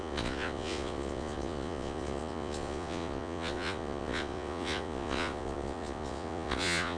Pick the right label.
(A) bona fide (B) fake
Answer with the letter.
B